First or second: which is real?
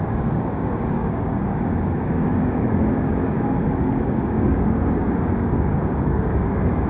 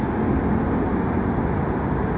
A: second